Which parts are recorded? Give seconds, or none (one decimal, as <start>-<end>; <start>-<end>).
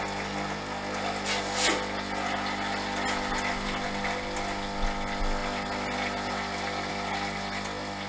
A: 0.0-8.1